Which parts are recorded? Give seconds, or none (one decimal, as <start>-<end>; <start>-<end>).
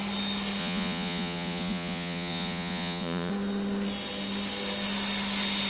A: 0.0-0.6; 3.3-5.7